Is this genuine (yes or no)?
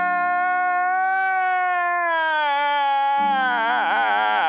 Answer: yes